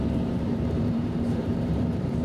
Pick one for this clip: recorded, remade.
remade